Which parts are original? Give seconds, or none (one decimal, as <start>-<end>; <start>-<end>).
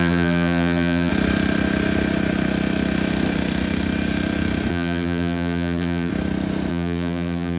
1.1-4.7; 6.1-6.7